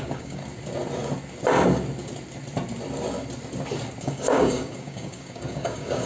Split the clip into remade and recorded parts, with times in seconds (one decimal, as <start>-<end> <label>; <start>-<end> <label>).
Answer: 0.0-0.4 remade; 0.4-4.0 recorded; 4.0-6.1 remade

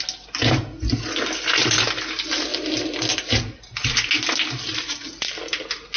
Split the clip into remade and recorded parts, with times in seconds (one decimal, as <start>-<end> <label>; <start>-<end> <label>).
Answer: 0.0-6.0 recorded

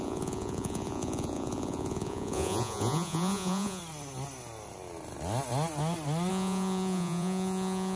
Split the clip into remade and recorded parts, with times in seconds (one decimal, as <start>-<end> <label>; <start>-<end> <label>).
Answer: 0.0-3.8 remade; 3.8-6.3 recorded; 6.3-8.0 remade

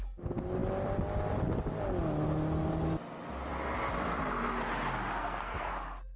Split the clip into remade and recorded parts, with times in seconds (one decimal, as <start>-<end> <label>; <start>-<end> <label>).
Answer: 0.0-5.2 recorded; 5.2-5.7 remade; 5.7-6.2 recorded

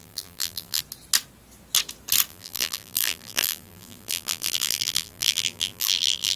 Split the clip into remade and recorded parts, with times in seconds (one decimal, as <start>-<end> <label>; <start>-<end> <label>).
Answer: 0.0-0.8 remade; 0.8-2.3 recorded; 2.3-6.4 remade

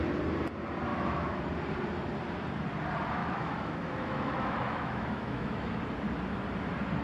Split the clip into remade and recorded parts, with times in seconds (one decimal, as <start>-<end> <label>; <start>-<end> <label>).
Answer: 0.0-0.9 recorded; 0.9-1.4 remade; 1.4-3.2 recorded; 3.2-5.8 remade; 5.8-7.0 recorded

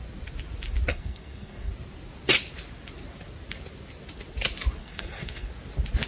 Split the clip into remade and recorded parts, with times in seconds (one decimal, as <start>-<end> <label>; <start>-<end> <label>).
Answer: 0.0-0.9 recorded; 0.9-1.7 remade; 1.7-4.8 recorded; 4.8-5.5 remade; 5.5-6.1 recorded